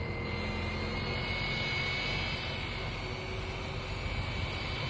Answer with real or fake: real